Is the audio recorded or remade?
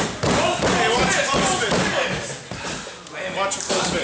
recorded